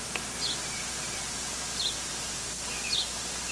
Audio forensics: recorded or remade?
recorded